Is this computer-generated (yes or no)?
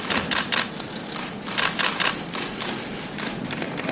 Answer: no